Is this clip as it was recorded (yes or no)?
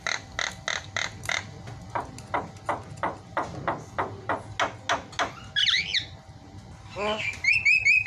yes